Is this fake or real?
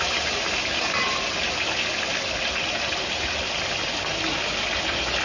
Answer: real